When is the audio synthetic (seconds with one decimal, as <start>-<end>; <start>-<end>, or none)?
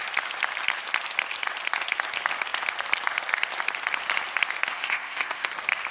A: 4.7-5.5